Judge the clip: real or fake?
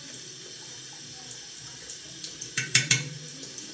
fake